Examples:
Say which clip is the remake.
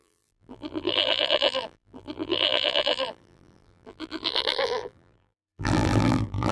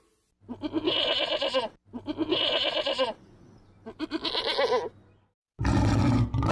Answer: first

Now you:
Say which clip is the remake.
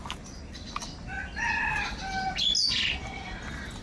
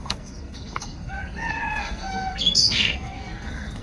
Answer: second